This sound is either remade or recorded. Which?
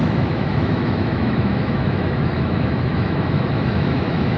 remade